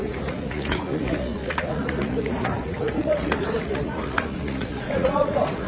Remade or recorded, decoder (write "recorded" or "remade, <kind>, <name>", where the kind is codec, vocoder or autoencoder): remade, vocoder, Vocos